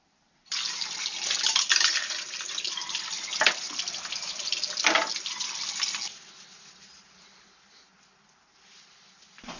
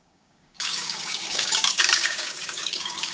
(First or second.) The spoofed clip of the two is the second